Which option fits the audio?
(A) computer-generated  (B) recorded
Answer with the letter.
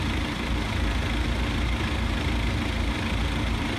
A